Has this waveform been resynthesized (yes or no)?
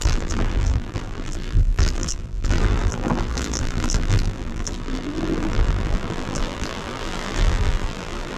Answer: yes